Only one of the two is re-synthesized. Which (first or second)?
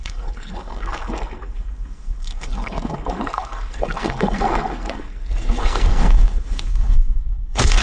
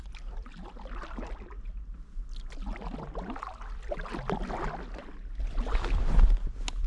first